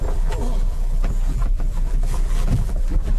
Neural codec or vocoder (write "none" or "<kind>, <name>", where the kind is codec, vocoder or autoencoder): vocoder, BigVGAN v2